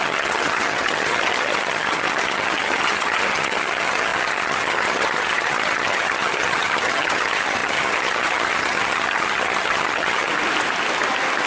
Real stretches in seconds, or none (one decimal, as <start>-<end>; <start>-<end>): 10.3-11.5